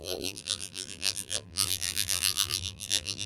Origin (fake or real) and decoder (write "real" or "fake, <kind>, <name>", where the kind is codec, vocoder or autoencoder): fake, vocoder, BigVGAN v2